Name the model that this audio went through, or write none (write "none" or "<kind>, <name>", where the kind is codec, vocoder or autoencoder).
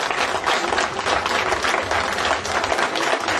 none